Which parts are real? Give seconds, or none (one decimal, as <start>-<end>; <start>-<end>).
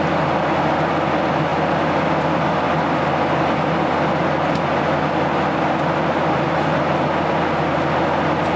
0.0-8.6